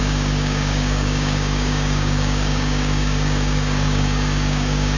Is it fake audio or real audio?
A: fake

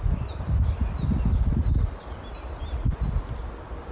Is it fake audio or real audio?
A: real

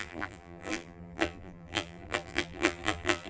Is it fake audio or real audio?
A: fake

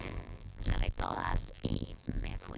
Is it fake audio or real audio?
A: fake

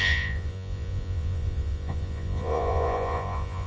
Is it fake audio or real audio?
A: fake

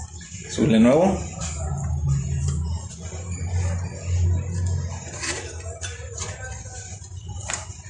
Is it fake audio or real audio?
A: real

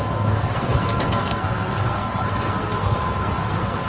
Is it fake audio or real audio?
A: fake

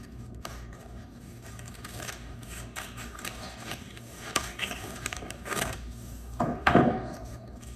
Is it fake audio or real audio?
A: fake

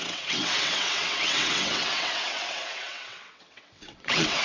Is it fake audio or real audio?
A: fake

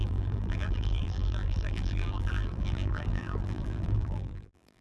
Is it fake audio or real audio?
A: fake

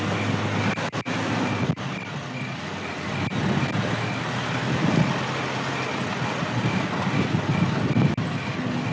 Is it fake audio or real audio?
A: real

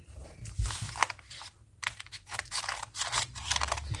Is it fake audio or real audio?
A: fake